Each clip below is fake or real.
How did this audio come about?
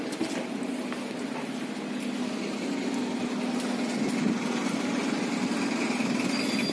real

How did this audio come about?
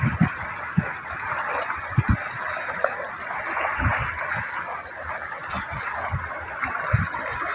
real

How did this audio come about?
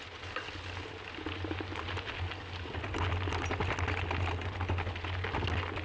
real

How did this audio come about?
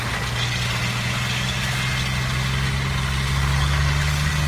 real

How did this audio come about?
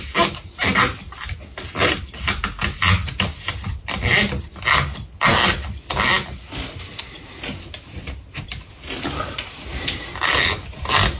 real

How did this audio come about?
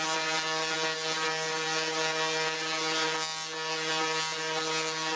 real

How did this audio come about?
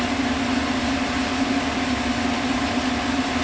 real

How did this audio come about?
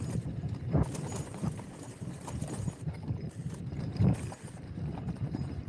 fake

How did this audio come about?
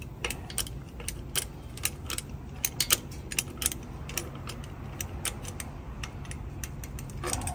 real